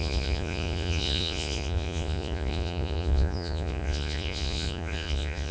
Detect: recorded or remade remade